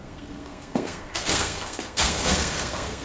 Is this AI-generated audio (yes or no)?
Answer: yes